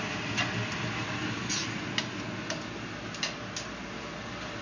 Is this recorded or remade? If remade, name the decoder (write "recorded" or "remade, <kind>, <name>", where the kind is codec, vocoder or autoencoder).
recorded